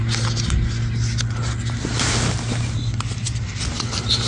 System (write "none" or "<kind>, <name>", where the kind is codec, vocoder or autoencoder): none